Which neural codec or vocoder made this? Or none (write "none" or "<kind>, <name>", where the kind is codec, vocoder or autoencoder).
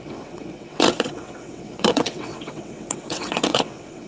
vocoder, WaveNeXt